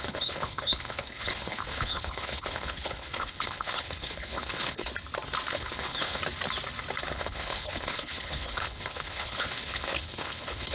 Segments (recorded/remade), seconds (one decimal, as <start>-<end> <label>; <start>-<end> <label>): 0.0-4.9 remade; 4.9-5.5 recorded; 5.5-6.2 remade; 6.2-7.1 recorded; 7.1-10.7 remade